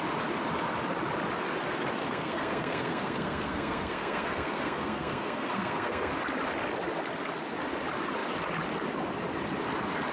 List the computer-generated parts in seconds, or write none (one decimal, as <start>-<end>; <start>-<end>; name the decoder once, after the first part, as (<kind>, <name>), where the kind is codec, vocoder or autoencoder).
2.0-6.1 (codec, SNAC)